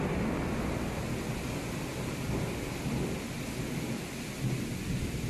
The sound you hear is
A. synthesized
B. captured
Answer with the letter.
B